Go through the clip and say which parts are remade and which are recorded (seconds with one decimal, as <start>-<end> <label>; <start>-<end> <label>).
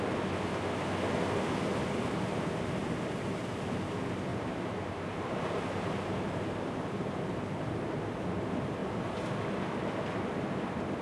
0.0-2.8 recorded; 2.8-3.4 remade; 3.4-4.3 recorded; 4.3-8.2 remade; 8.2-11.0 recorded